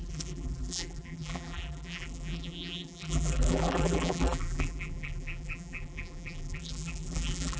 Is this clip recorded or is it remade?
remade